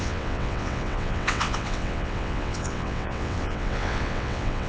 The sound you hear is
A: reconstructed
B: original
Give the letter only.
A